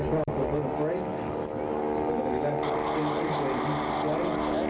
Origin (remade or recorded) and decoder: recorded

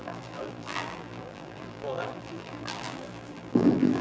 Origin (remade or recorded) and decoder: remade, vocoder, BigVGAN v2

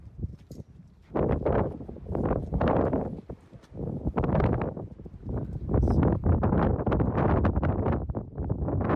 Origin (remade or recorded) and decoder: recorded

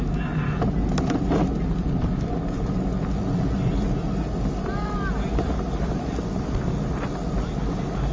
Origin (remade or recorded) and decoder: recorded